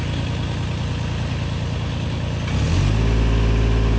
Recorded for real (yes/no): yes